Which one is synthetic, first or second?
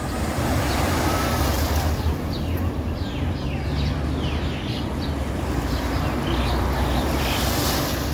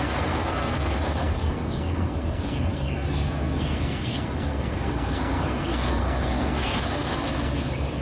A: second